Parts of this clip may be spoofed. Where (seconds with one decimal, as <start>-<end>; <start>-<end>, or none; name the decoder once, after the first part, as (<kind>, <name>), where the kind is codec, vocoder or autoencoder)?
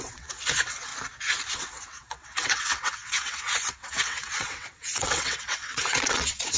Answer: 0.0-0.9 (vocoder, WaveNeXt); 1.5-6.6